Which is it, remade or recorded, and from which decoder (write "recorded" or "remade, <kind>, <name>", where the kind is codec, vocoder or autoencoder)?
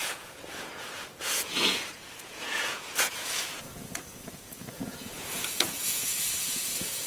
remade, vocoder, Vocos